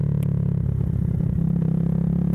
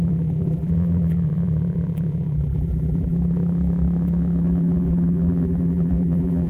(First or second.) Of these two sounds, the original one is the first